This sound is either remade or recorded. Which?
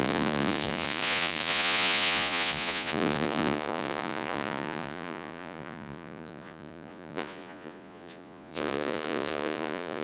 remade